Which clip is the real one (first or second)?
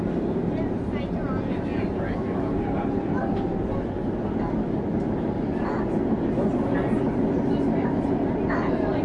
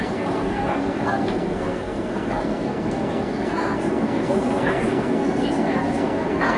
first